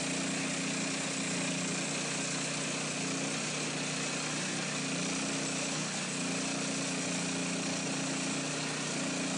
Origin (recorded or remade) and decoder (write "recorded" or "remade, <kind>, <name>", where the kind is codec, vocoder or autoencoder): recorded